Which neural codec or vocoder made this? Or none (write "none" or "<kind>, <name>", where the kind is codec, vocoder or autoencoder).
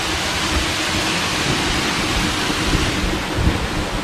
none